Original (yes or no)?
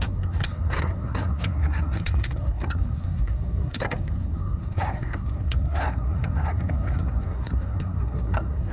no